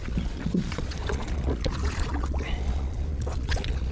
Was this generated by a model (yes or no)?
yes